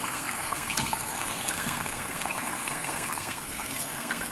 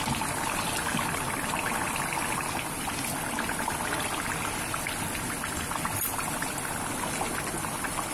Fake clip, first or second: first